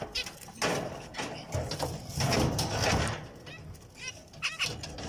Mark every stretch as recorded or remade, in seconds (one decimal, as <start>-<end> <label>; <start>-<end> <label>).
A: 0.0-5.1 recorded